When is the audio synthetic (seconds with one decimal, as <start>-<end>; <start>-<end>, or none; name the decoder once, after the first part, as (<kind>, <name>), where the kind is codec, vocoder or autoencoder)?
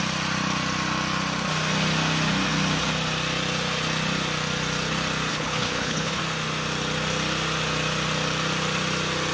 5.3-6.2 (codec, HILCodec)